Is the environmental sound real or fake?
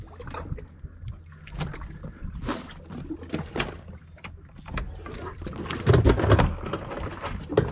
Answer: real